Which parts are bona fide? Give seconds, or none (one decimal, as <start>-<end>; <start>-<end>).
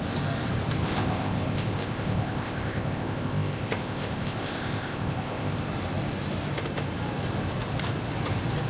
0.0-0.8; 5.6-8.7